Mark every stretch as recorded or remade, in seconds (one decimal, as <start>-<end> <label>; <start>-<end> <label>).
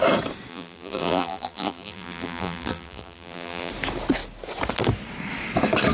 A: 0.0-0.5 recorded; 0.5-3.7 remade; 3.7-5.9 recorded